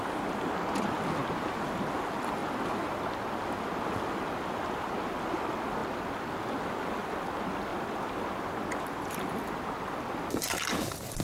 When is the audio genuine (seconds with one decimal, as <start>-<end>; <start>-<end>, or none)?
0.0-11.2